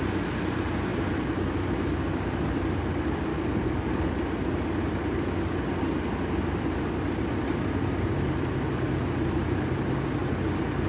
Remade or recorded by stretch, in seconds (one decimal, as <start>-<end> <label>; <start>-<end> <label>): 0.0-3.3 recorded; 3.3-4.1 remade; 4.1-10.9 recorded